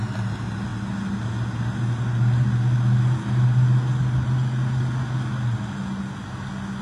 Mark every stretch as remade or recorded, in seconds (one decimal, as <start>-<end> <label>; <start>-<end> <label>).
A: 0.0-6.8 recorded